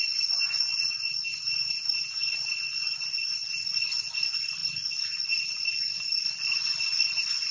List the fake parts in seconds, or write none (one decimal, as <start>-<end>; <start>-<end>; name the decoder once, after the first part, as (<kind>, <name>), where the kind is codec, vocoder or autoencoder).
1.3-2.3 (vocoder, Vocos)